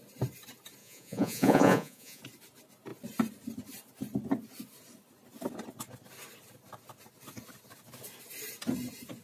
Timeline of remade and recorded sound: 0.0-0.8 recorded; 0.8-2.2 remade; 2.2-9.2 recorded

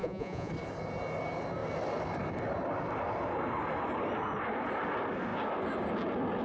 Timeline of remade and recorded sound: 0.0-0.5 remade; 0.5-6.4 recorded

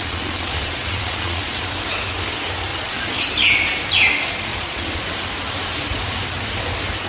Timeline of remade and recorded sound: 0.0-1.6 remade; 1.6-2.7 recorded; 2.7-3.2 remade; 3.2-4.5 recorded; 4.5-5.0 remade; 5.0-7.1 recorded